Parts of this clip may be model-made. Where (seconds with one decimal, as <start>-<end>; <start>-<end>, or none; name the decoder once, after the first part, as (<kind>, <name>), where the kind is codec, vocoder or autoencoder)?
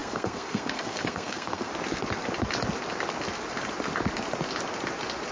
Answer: 0.0-1.7 (codec, SNAC)